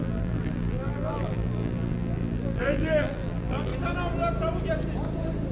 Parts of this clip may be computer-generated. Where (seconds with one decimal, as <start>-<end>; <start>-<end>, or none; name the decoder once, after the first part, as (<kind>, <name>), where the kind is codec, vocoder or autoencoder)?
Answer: 0.0-3.7 (vocoder, BigVGAN v2)